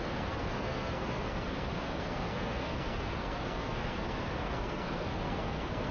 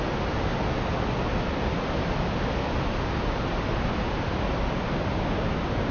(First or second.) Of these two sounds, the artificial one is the first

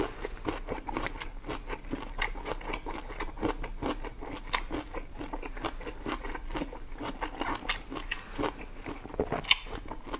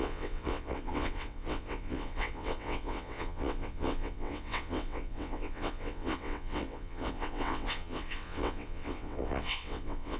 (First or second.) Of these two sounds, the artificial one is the second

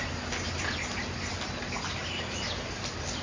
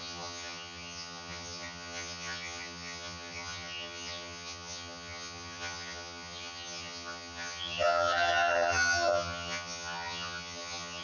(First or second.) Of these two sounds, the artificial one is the second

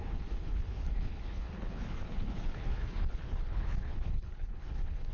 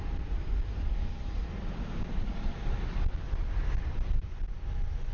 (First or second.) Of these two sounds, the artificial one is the first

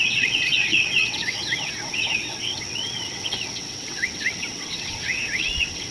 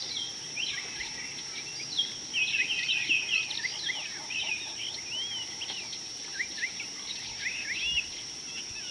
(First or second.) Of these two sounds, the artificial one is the first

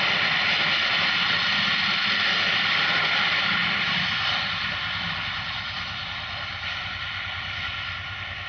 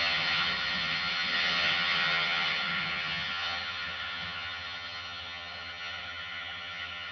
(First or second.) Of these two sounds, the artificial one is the second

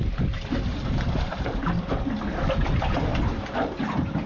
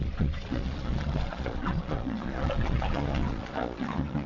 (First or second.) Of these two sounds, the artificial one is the second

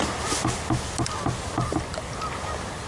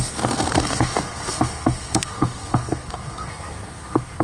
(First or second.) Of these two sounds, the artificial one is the second